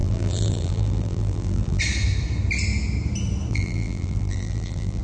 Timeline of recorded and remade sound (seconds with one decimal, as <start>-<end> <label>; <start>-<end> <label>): 0.0-1.8 remade; 1.8-3.5 recorded; 3.5-5.0 remade